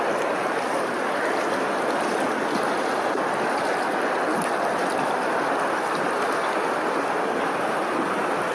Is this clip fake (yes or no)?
no